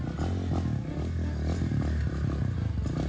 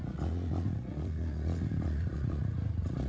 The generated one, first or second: second